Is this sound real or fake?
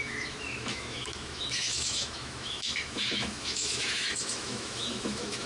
fake